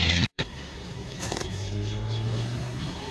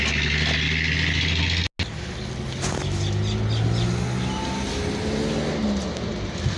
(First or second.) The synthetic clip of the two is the first